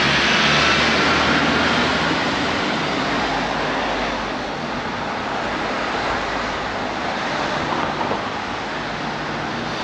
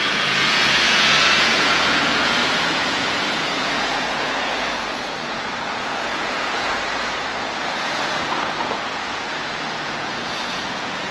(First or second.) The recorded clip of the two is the first